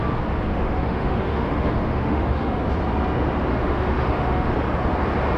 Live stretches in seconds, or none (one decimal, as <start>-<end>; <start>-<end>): 0.0-0.5; 2.6-3.5; 4.5-5.4

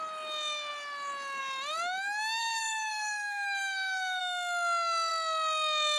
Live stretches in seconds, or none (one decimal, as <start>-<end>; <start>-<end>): 0.0-2.4; 4.2-6.0

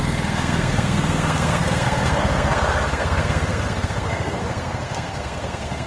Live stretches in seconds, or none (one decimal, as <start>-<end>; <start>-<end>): none

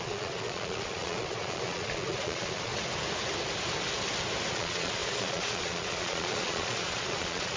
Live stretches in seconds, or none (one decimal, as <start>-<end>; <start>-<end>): 2.7-4.5

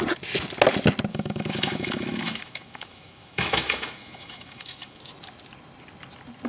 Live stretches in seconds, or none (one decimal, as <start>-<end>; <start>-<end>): 0.0-1.1; 5.0-6.5

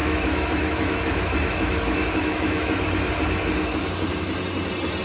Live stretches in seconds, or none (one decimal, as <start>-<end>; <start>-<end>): 2.8-5.0

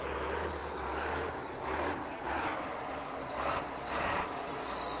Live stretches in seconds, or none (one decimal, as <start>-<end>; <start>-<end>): 0.0-5.0